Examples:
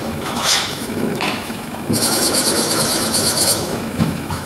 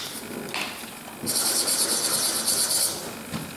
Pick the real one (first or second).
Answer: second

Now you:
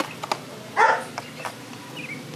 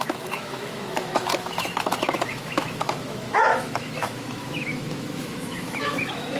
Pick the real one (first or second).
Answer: first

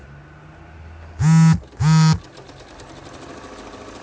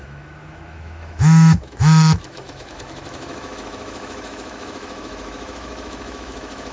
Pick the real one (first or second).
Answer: first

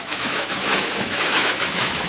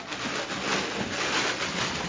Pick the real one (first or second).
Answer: second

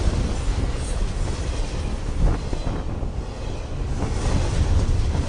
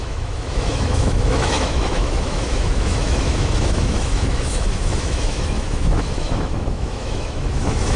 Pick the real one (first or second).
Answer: first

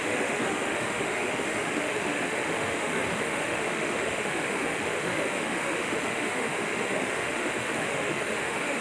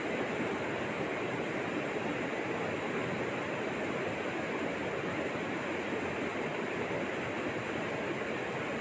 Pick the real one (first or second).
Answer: second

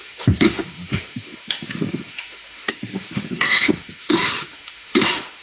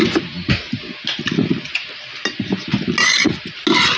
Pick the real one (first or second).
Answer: second